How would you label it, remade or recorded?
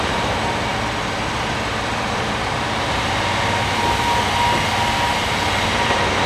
recorded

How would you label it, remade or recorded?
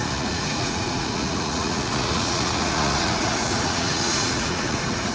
remade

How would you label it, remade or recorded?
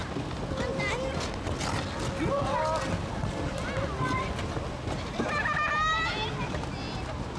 recorded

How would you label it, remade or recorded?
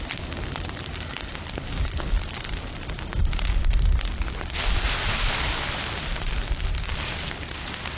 recorded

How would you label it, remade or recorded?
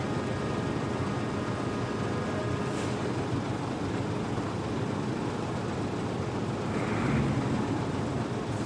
recorded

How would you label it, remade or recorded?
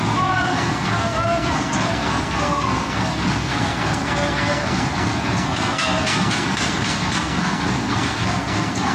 remade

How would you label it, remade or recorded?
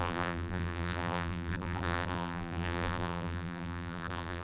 remade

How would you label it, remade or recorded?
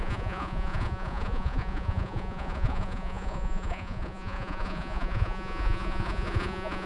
remade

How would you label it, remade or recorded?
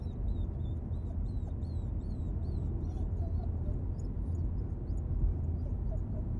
recorded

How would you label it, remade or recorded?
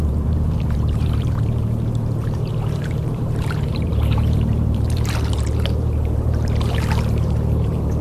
remade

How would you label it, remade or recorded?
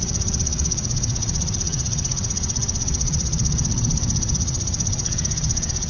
remade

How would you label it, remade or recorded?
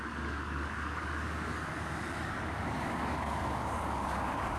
remade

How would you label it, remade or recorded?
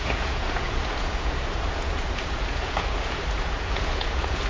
remade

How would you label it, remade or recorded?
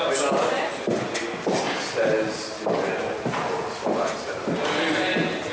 recorded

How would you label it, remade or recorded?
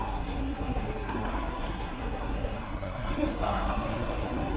remade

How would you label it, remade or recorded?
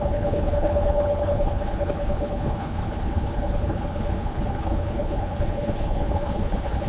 remade